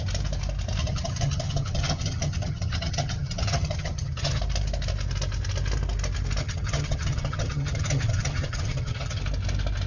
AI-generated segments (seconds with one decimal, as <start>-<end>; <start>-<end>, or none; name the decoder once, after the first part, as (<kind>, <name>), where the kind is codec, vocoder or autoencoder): 0.8-4.4 (vocoder, HiFi-GAN); 6.4-9.2